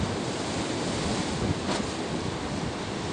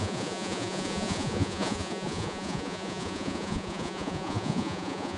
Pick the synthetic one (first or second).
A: second